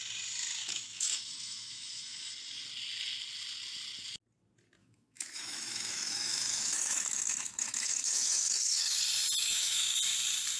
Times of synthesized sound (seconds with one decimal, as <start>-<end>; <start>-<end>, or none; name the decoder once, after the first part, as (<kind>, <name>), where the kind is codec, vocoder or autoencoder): 0.6-2.3 (autoencoder, DAC-VAE); 4.8-9.0; 9.4-10.0